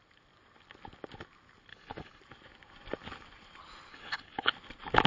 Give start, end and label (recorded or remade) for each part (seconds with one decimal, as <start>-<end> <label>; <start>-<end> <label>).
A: 0.0-1.7 recorded; 1.7-2.2 remade; 2.2-3.9 recorded; 3.9-4.5 remade; 4.5-5.1 recorded